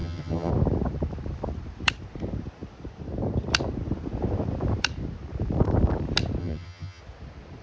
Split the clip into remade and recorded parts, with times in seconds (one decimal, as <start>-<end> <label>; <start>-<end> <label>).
0.0-0.5 remade; 0.5-6.4 recorded; 6.4-7.0 remade; 7.0-7.6 recorded